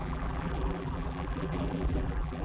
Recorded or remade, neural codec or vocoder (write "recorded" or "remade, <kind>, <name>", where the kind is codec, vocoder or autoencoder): remade, vocoder, BigVGAN v2